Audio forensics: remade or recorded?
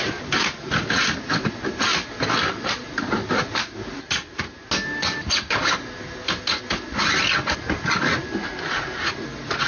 recorded